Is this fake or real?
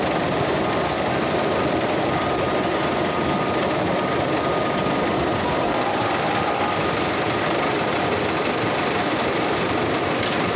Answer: real